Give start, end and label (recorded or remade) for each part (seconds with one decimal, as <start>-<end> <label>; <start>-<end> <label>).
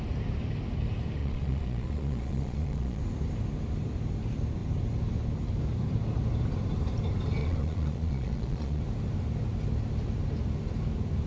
0.0-1.2 recorded; 1.2-3.0 remade; 3.0-7.4 recorded; 7.4-8.8 remade; 8.8-11.3 recorded